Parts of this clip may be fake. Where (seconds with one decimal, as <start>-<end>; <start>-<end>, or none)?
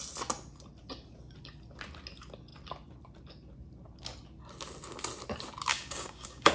5.7-6.5